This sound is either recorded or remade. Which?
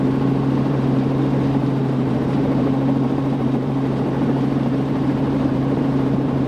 remade